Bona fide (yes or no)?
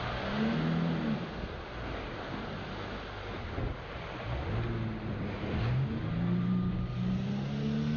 yes